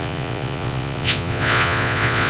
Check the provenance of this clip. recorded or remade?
remade